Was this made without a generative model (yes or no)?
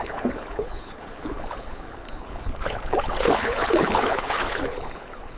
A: no